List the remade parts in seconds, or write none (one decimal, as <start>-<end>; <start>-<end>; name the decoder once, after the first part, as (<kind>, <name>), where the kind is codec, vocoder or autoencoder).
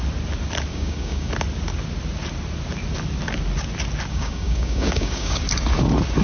0.7-1.3 (codec, DAC); 4.1-5.4